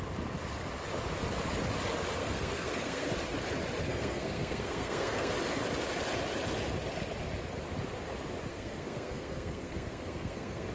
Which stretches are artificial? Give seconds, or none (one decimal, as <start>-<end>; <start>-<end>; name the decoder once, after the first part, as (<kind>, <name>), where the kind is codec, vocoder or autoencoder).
2.2-3.1 (codec, SNAC); 3.9-5.3; 8.5-10.7